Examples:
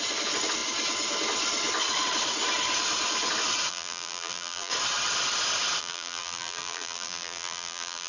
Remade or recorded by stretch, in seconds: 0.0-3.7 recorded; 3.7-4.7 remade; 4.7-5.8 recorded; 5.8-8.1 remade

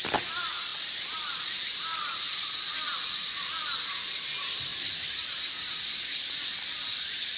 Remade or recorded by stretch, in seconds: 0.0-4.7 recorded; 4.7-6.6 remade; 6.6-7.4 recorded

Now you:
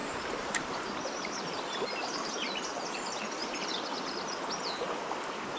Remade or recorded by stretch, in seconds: 0.0-2.8 remade; 2.8-3.4 recorded; 3.4-4.1 remade; 4.1-5.6 recorded

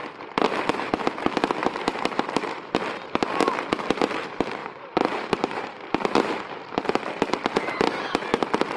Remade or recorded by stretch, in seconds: 0.0-1.6 recorded; 1.6-2.8 remade; 2.8-4.6 recorded; 4.6-6.4 remade; 6.4-8.8 recorded